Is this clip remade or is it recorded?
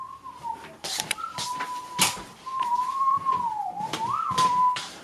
remade